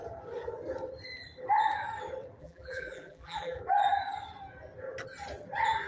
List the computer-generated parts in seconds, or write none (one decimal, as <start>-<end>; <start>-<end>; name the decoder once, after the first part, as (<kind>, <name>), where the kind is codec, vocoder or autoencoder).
2.4-3.6 (vocoder, BigVGAN v2)